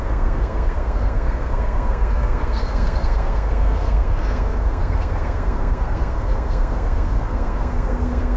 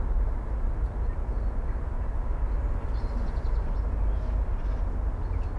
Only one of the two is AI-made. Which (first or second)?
first